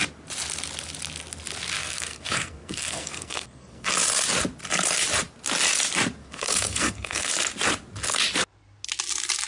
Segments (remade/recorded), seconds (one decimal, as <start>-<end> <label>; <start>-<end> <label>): 0.0-1.8 recorded; 1.8-3.9 remade; 3.9-6.2 recorded; 6.2-7.3 remade; 7.3-9.5 recorded